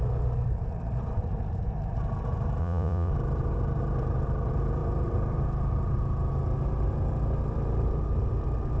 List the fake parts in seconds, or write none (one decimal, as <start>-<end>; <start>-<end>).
2.6-3.1